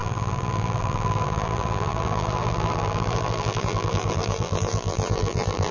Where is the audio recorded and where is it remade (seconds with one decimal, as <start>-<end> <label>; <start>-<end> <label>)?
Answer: 0.0-5.7 remade